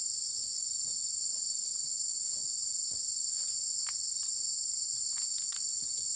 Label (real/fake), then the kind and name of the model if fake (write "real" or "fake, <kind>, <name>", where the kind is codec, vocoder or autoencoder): real